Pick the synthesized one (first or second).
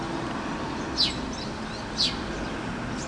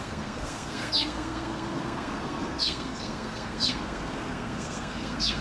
second